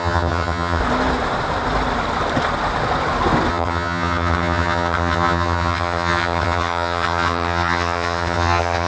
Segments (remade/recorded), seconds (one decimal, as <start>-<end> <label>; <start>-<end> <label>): 0.0-0.8 remade; 0.8-3.5 recorded; 3.5-8.9 remade